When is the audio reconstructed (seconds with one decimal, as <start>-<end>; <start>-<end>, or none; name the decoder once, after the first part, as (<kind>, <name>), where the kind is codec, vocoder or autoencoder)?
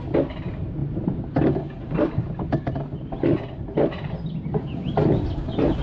none